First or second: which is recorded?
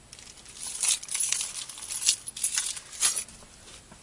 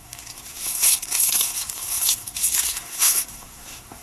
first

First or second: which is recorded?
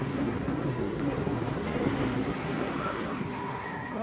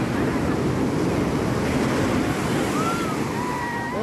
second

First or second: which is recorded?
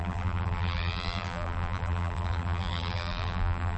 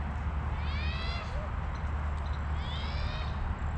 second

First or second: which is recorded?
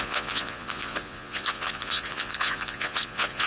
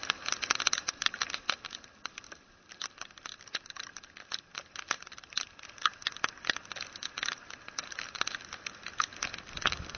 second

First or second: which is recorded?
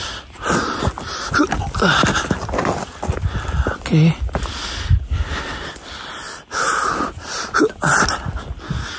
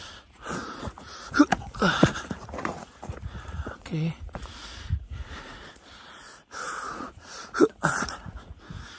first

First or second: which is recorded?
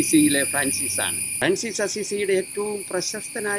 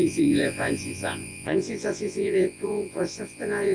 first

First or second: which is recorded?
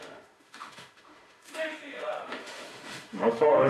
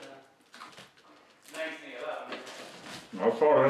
second